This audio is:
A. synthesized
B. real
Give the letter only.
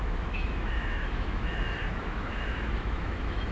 A